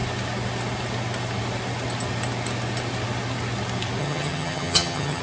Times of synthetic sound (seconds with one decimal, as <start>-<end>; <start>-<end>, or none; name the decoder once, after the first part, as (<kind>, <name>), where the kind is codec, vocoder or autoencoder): 4.0-5.2 (vocoder, HiFi-GAN)